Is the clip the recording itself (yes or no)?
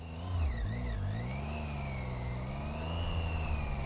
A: yes